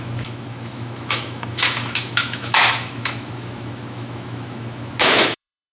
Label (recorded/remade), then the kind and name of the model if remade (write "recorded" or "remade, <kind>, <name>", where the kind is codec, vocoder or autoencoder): remade, autoencoder, DAC-VAE